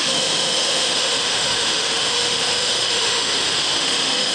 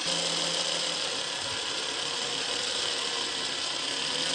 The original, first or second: second